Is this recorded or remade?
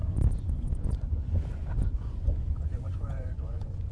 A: remade